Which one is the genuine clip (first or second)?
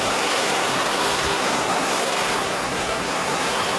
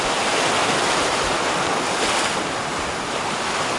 second